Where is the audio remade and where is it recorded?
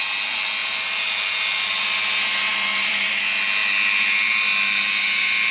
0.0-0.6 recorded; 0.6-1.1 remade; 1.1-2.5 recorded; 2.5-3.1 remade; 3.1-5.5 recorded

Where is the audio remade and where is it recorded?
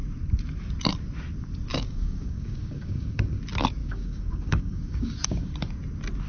0.0-1.7 recorded; 1.7-3.4 remade; 3.4-3.8 recorded; 3.8-5.7 remade; 5.7-6.3 recorded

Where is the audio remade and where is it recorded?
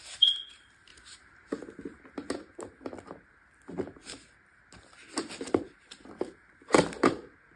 0.0-7.6 recorded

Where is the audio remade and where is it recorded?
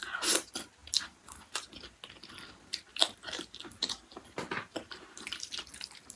0.0-2.9 recorded; 2.9-6.2 remade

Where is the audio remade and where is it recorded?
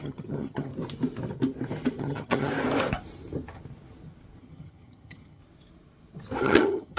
0.0-0.7 remade; 0.7-2.0 recorded; 2.0-2.5 remade; 2.5-4.4 recorded; 4.4-5.4 remade; 5.4-6.4 recorded; 6.4-7.0 remade